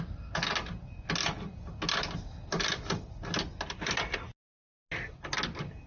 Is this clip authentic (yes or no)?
yes